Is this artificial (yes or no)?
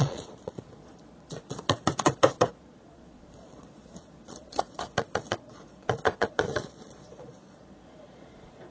yes